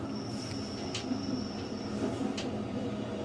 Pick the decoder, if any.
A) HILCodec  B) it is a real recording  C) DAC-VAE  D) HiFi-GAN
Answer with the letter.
B